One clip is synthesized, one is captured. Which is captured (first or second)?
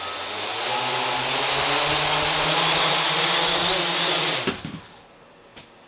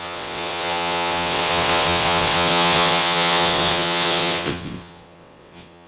first